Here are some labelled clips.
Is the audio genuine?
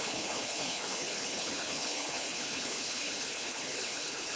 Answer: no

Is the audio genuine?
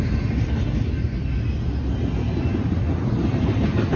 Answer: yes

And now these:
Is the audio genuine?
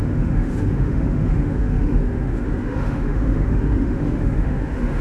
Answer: no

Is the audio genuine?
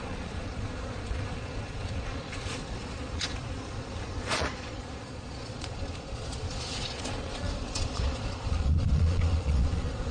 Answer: no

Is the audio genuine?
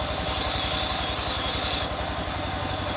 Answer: yes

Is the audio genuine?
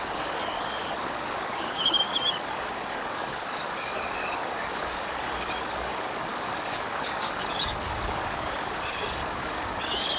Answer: no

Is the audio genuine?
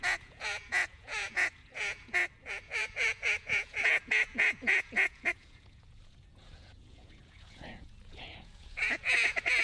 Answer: no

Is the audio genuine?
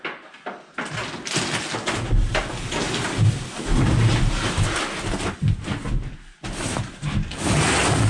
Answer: yes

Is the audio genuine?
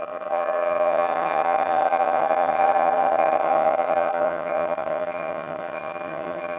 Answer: no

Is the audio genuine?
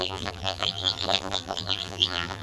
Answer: no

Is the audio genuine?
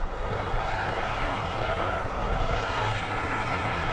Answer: no